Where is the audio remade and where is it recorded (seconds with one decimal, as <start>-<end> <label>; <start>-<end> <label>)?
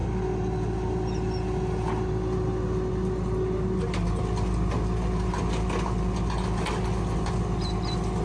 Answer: 0.0-8.2 recorded